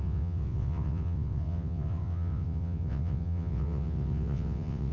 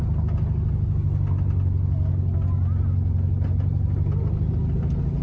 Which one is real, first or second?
second